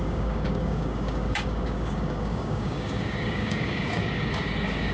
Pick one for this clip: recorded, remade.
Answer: remade